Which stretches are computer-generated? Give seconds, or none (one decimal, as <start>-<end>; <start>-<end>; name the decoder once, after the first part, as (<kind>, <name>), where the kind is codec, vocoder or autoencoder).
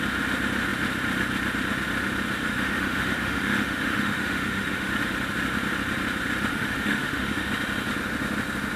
2.4-4.9 (autoencoder, DAC-VAE); 6.5-7.5